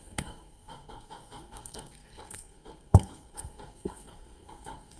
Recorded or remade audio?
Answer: remade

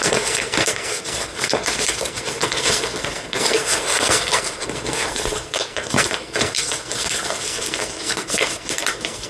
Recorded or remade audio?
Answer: remade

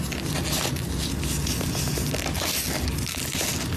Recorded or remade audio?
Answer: recorded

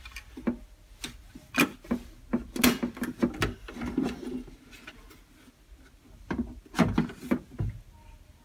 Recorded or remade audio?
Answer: recorded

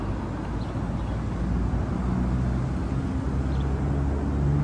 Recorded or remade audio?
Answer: recorded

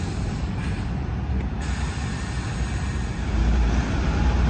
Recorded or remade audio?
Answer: remade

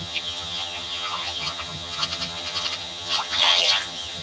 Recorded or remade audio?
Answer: remade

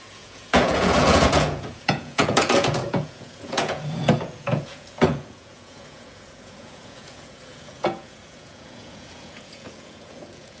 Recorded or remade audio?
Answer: remade